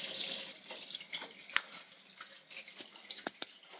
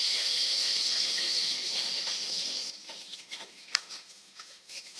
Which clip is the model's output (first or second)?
second